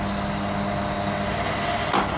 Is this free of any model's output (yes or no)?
yes